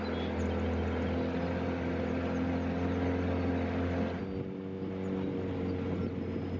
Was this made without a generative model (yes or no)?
yes